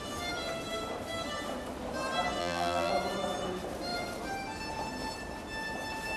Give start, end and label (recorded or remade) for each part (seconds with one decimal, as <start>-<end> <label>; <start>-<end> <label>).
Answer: 0.0-2.4 recorded; 2.4-2.9 remade; 2.9-6.2 recorded